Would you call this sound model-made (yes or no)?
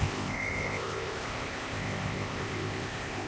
yes